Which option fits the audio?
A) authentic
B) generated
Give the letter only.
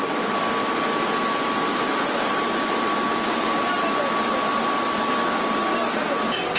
A